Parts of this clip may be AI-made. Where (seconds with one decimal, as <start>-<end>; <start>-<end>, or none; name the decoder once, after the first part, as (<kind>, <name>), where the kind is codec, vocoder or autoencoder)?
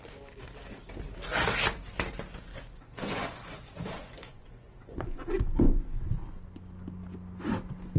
2.5-6.2 (vocoder, Vocos)